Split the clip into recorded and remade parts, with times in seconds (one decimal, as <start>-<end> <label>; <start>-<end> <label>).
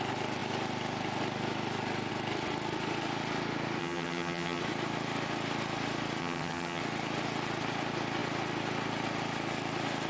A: 0.0-3.8 recorded; 3.8-4.6 remade; 4.6-6.2 recorded; 6.2-6.8 remade; 6.8-10.1 recorded